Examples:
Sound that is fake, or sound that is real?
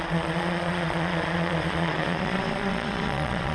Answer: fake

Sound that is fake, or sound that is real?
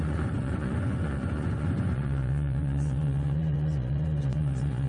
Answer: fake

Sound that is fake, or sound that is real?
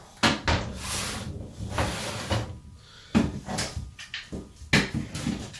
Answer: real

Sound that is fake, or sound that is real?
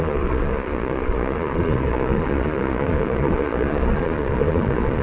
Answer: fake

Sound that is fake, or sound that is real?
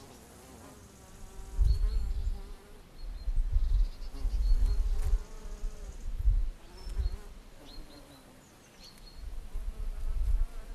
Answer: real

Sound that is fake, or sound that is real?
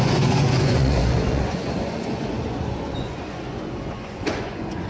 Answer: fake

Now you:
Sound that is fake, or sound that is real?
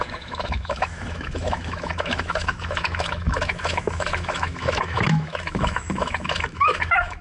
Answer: fake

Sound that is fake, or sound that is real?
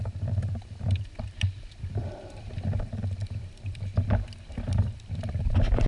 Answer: fake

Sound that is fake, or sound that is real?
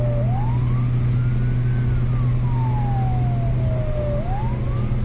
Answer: real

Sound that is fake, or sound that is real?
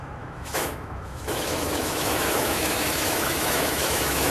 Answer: fake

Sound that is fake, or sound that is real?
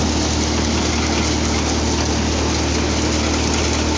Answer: real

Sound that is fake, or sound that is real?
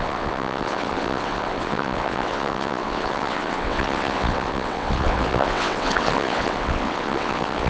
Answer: fake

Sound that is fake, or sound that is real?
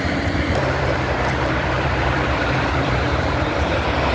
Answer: fake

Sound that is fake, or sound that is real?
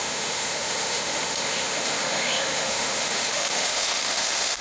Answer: fake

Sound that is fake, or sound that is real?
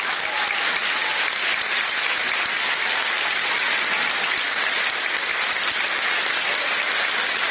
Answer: real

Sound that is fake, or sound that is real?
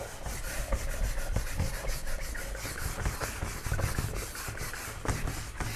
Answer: real